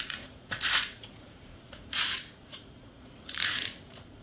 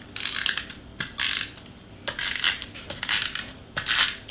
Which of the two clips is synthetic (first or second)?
first